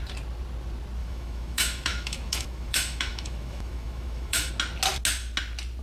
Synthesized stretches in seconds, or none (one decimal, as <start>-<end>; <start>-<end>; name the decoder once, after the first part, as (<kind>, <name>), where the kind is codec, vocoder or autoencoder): 1.0-4.5 (autoencoder, DAC-VAE)